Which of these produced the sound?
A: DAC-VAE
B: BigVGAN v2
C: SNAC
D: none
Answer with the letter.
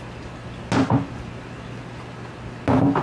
D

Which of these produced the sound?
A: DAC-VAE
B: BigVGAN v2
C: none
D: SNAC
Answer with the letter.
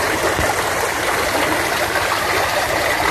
C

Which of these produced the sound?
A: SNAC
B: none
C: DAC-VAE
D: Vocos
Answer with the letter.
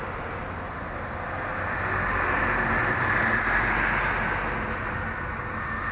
B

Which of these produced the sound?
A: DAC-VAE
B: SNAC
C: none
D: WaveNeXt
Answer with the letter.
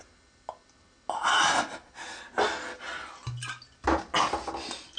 C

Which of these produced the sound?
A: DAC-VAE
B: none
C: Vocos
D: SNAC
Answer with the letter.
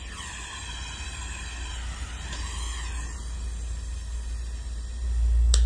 B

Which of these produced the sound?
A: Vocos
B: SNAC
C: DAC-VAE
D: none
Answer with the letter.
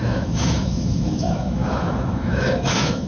C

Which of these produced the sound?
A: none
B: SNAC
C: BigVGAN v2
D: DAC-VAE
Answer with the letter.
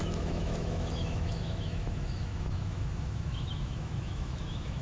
D